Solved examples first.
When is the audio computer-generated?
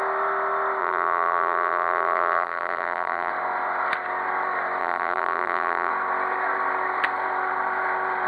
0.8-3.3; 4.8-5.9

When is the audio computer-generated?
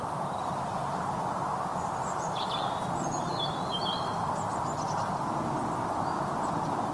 0.0-4.1; 5.4-6.9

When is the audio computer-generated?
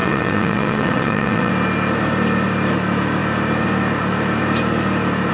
0.0-1.5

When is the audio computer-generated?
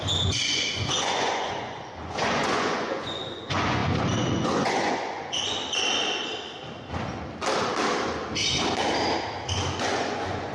0.0-5.6; 9.8-10.5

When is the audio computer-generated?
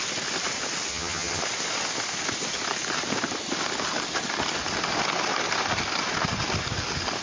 0.9-1.4